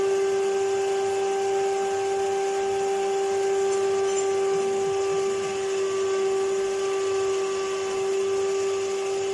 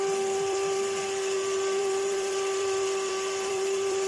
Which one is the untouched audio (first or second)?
first